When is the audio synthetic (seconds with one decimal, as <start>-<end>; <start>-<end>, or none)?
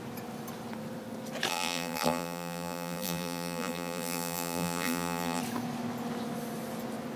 1.5-5.4